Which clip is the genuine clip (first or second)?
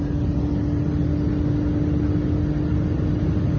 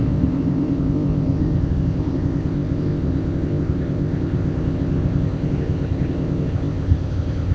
first